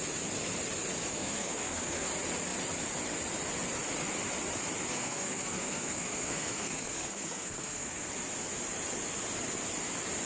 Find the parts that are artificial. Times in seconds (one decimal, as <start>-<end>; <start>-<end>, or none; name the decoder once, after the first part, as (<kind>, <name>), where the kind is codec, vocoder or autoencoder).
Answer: 1.1-2.1 (codec, SNAC); 4.9-8.1